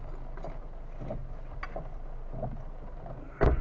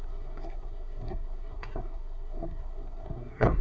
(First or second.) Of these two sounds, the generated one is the second